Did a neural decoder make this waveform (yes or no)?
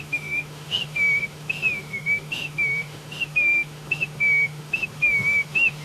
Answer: yes